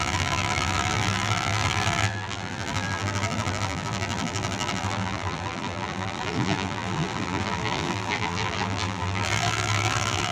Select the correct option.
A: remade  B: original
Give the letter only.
A